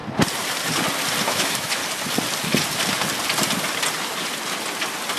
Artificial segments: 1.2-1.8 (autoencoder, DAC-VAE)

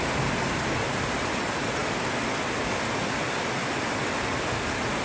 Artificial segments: none